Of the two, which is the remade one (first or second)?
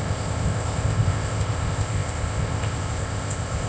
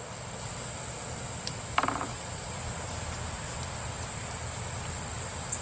first